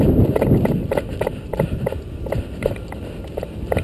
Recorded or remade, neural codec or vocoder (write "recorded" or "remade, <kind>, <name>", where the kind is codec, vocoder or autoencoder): remade, vocoder, BigVGAN v2